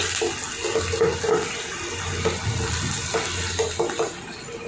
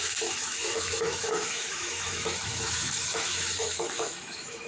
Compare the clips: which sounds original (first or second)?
first